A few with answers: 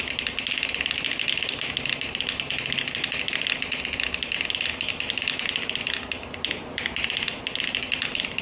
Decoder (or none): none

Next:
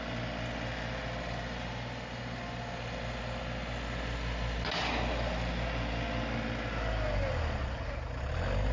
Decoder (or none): none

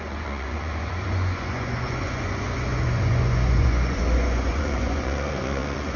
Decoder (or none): vocoder, Vocos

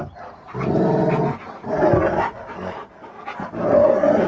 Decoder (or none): none